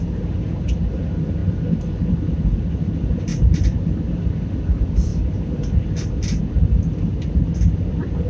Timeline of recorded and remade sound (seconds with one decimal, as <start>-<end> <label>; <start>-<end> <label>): 0.0-8.3 recorded